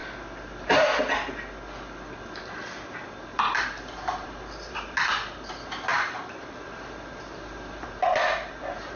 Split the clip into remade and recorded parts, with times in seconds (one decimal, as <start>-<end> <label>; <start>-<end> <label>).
0.0-3.8 recorded; 3.8-9.0 remade